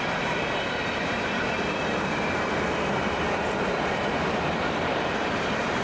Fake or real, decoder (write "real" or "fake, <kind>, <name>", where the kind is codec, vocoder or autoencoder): fake, vocoder, BigVGAN v2